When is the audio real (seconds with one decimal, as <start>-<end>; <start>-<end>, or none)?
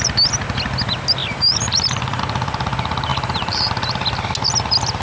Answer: 0.0-1.2; 2.2-3.1; 3.7-5.0